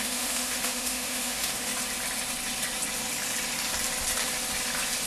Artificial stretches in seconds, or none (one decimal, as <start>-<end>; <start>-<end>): 0.0-1.7

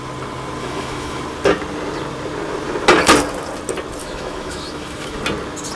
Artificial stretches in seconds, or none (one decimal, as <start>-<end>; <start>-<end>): 0.6-1.2; 4.0-5.2

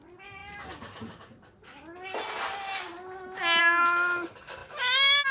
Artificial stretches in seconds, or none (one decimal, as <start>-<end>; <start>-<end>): none

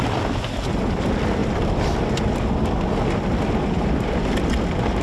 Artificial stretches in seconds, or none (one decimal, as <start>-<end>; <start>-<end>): none

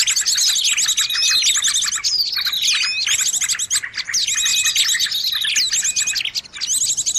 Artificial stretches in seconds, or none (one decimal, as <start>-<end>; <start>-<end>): none

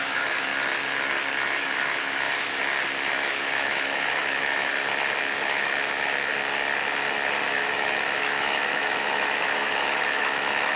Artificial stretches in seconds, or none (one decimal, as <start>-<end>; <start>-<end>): 0.0-0.5; 1.6-2.6; 3.1-4.7; 5.2-6.3; 7.5-10.8

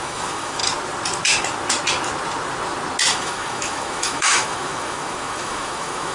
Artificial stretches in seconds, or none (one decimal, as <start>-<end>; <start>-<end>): 0.0-0.6; 3.1-6.1

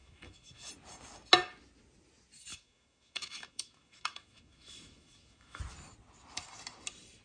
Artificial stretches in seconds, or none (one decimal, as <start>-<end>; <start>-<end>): 0.0-0.7; 2.5-5.6